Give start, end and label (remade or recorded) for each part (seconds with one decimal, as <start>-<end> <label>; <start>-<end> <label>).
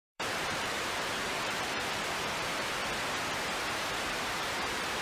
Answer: 0.0-2.8 remade; 2.8-3.7 recorded; 3.7-5.0 remade